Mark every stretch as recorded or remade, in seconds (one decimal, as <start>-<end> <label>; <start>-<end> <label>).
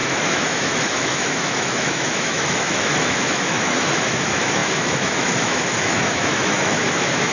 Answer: 0.0-7.3 remade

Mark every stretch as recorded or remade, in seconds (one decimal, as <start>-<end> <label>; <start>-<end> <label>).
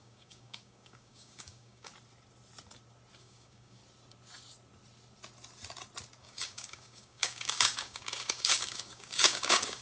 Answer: 0.0-1.9 remade; 1.9-3.2 recorded; 3.2-3.8 remade; 3.8-6.2 recorded; 6.2-9.8 remade